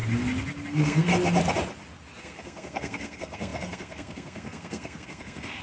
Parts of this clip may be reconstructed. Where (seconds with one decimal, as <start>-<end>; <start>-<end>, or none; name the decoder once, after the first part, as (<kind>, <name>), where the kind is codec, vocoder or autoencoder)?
0.7-1.1 (codec, SNAC); 2.2-5.6